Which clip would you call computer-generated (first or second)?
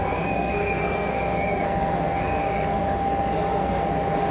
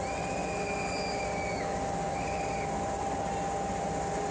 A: first